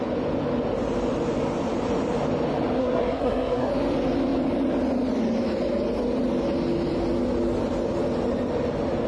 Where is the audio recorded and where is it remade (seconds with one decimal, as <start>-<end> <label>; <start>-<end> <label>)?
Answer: 0.0-2.8 recorded; 2.8-3.7 remade; 3.7-9.1 recorded